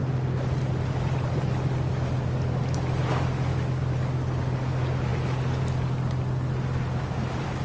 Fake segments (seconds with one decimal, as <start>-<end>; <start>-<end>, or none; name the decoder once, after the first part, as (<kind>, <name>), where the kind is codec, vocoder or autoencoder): none